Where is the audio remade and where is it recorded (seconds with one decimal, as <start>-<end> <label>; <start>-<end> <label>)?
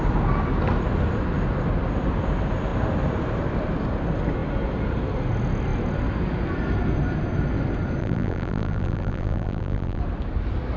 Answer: 0.0-8.0 recorded; 8.0-10.0 remade; 10.0-10.8 recorded